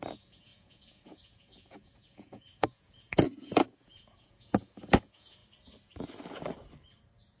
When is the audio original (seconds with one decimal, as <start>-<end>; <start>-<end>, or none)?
5.4-7.4